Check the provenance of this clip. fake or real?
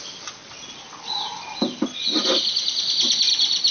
real